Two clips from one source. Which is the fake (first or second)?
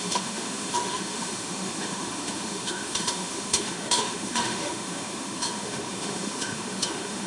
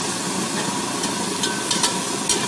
first